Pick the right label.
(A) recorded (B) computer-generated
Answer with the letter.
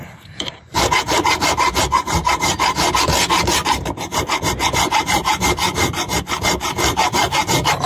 B